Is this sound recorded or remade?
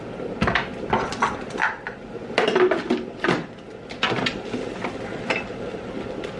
recorded